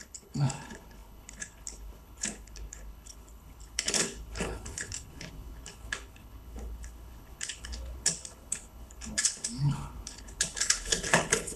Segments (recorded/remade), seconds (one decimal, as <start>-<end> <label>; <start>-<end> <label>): 0.0-11.6 remade